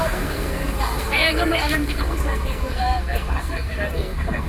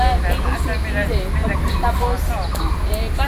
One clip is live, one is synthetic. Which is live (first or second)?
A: second